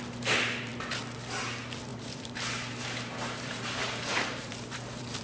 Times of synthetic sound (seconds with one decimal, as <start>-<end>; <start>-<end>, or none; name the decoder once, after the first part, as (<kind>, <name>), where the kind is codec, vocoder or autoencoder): 1.9-5.2 (vocoder, BigVGAN v2)